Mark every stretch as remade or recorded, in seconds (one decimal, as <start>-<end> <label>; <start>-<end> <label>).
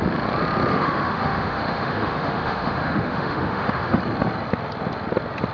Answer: 0.0-0.7 recorded; 0.7-4.0 remade; 4.0-5.5 recorded